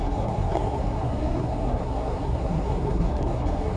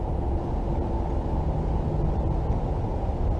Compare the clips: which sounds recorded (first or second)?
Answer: second